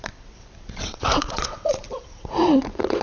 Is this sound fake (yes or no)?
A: yes